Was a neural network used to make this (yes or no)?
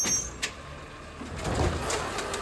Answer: no